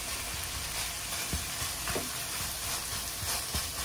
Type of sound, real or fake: real